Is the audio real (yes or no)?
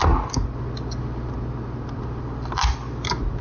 yes